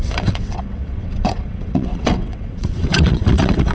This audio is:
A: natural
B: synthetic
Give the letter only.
B